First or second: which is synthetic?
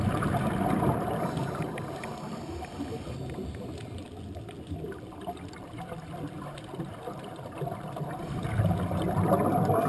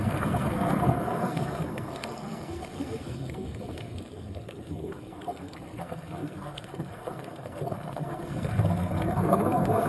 second